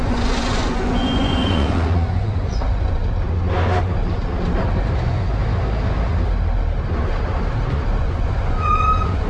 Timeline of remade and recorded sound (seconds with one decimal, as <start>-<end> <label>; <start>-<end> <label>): 0.0-3.0 remade; 3.0-5.0 recorded; 5.0-5.4 remade; 5.4-8.0 recorded; 8.0-9.3 remade